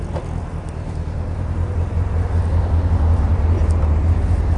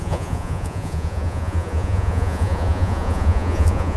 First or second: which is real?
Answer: first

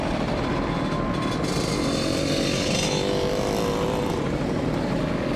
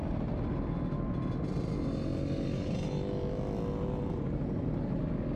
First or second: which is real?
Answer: second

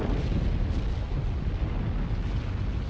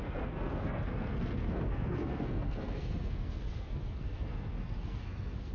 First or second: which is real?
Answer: first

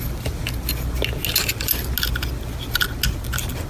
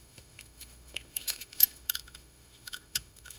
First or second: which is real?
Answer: first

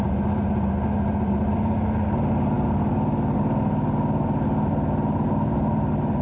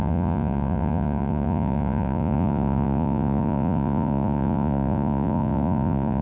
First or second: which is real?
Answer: first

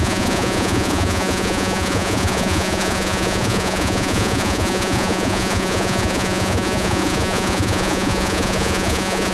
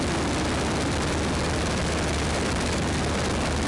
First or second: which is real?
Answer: second